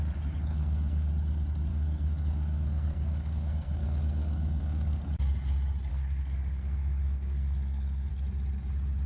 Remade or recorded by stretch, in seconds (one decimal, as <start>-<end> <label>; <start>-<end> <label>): 0.0-0.5 recorded; 0.5-1.1 remade; 1.1-1.7 recorded; 1.7-5.0 remade; 5.0-5.9 recorded; 5.9-8.1 remade; 8.1-9.1 recorded